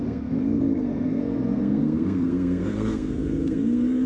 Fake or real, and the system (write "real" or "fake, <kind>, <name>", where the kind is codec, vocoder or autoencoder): fake, codec, SNAC